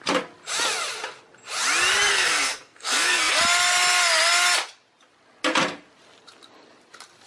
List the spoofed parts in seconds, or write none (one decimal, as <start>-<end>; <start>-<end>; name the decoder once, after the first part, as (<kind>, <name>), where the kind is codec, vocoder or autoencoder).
2.1-3.4 (codec, SNAC)